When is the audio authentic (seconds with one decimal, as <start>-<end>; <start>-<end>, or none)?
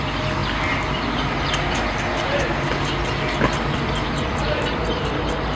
0.0-5.6